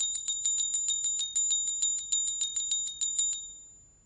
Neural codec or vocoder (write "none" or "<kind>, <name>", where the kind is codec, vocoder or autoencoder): none